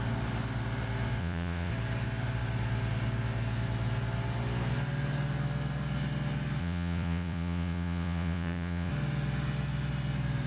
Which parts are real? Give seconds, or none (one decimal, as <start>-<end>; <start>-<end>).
0.0-1.2; 1.7-6.6; 8.9-10.5